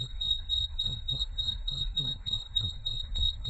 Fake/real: fake